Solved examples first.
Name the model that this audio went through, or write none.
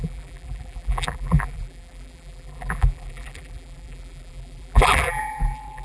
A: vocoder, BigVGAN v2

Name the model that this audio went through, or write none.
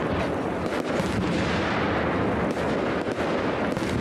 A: none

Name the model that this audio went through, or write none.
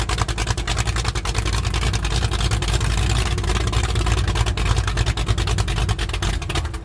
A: none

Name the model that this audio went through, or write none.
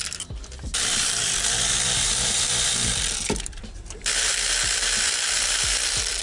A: vocoder, BigVGAN v2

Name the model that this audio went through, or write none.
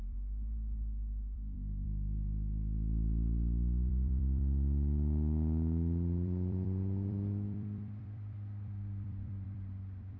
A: vocoder, BigVGAN v2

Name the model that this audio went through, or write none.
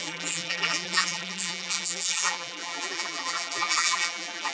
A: vocoder, BigVGAN v2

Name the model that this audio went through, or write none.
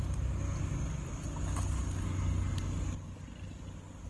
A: none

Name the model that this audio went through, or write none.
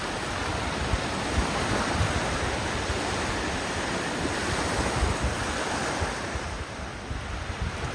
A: vocoder, BigVGAN v2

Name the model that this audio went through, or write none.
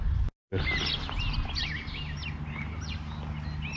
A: none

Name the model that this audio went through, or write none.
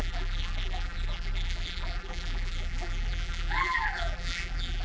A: vocoder, BigVGAN v2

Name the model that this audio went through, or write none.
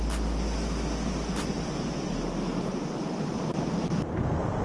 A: none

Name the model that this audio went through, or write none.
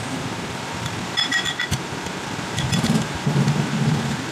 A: vocoder, BigVGAN v2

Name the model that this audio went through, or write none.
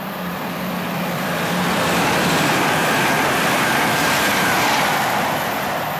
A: vocoder, BigVGAN v2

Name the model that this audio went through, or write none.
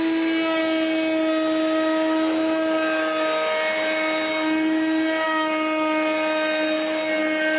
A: none